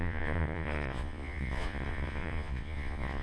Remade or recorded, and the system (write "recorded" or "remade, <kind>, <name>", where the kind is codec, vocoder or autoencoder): remade, vocoder, Vocos